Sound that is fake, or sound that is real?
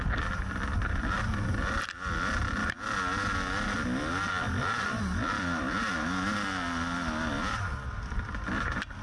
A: real